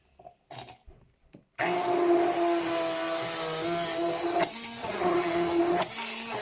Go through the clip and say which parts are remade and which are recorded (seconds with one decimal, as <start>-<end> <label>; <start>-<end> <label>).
0.0-4.8 recorded; 4.8-5.6 remade; 5.6-6.4 recorded